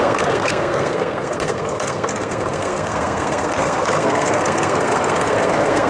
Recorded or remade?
remade